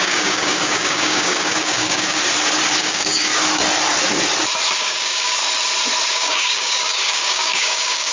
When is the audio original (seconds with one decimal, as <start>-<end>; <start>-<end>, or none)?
2.2-2.8; 3.3-4.8; 5.4-6.1